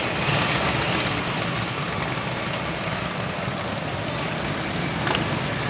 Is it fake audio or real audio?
real